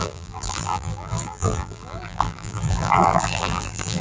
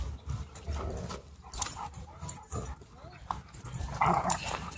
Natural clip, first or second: second